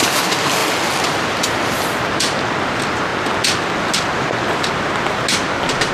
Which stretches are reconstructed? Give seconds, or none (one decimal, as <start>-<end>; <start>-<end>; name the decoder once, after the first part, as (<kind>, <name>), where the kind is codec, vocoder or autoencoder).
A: none